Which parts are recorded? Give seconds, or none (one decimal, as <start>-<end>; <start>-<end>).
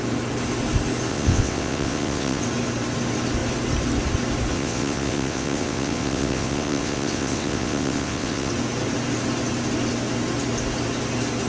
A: 0.0-1.1; 2.4-4.5; 8.5-11.5